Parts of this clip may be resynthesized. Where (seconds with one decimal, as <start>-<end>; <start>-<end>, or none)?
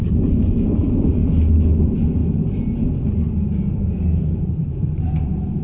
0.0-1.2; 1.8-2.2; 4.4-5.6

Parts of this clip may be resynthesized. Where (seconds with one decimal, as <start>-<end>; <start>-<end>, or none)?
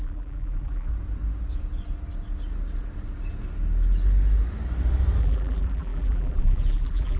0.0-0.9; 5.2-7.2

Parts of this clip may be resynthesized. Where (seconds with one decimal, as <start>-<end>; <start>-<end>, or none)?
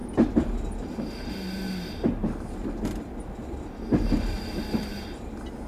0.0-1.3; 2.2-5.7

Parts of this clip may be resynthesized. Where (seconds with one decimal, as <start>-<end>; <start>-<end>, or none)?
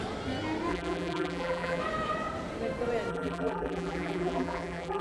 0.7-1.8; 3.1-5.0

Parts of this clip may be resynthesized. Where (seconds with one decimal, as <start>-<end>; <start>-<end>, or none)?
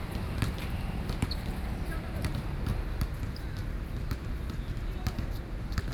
0.0-2.7; 5.5-5.9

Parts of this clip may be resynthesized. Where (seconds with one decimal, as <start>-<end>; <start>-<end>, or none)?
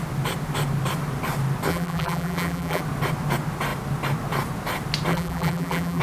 1.7-2.8; 5.1-6.0